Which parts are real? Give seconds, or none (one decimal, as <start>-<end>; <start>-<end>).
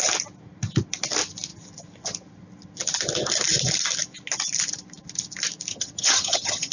0.0-5.7